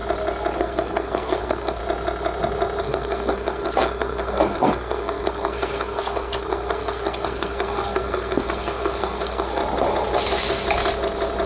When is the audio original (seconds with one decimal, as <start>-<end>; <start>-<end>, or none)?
0.0-0.6; 1.8-2.8; 9.6-11.5